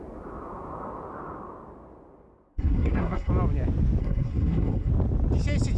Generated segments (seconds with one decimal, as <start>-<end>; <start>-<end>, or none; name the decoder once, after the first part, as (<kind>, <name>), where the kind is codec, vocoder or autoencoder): 2.5-3.3 (codec, SNAC); 4.0-4.9